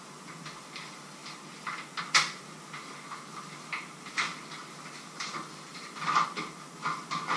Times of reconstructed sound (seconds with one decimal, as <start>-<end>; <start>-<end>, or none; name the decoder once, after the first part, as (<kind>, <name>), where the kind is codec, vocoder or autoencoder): none